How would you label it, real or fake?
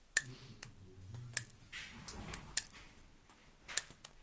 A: real